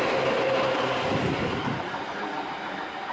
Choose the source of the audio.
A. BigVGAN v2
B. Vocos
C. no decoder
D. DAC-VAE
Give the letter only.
C